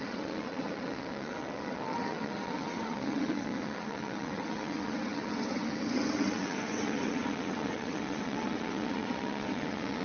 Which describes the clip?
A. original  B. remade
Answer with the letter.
B